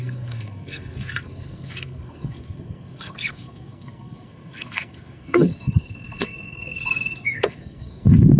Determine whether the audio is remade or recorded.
remade